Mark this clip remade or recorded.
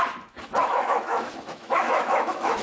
remade